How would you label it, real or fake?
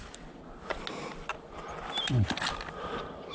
real